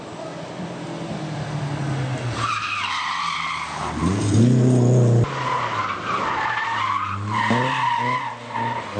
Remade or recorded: recorded